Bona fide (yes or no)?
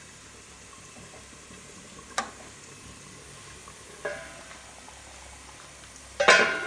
yes